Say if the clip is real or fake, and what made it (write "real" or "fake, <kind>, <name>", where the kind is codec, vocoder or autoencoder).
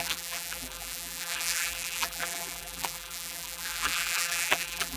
fake, vocoder, BigVGAN v2